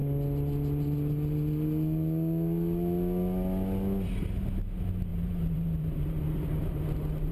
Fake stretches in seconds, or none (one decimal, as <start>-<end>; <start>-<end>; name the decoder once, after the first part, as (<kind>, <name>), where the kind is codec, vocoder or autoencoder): 5.1-7.3 (vocoder, BigVGAN v2)